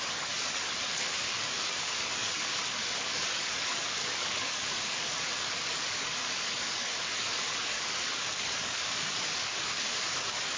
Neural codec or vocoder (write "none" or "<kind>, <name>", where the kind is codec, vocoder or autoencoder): codec, DAC